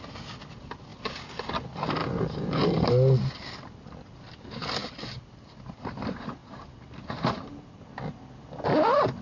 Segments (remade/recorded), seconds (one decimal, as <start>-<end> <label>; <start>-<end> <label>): 0.0-2.0 recorded; 2.0-2.9 remade; 2.9-6.4 recorded; 6.4-7.8 remade; 7.8-9.2 recorded